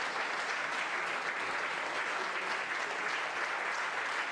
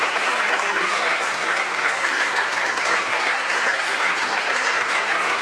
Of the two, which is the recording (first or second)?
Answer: first